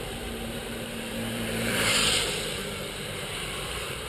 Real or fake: fake